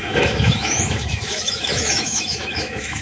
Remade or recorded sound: remade